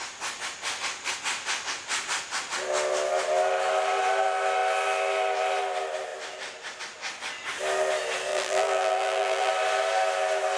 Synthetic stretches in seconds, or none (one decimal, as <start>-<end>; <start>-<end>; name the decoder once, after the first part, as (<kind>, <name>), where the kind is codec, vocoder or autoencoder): 8.3-9.5 (vocoder, BigVGAN v2)